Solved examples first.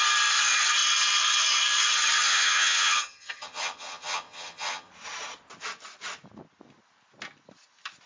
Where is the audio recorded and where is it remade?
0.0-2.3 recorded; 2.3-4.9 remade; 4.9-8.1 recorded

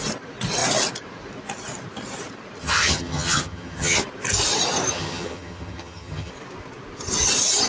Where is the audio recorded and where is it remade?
0.0-2.6 recorded; 2.6-4.0 remade; 4.0-4.9 recorded; 4.9-6.3 remade; 6.3-7.7 recorded